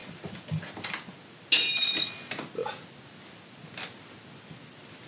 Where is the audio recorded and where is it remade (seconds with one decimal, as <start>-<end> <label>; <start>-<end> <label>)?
0.0-5.1 recorded